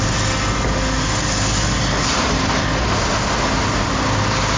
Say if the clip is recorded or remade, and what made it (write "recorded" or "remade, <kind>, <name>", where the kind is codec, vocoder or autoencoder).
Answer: recorded